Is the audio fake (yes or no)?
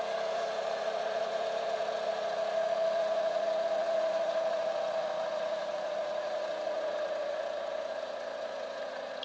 yes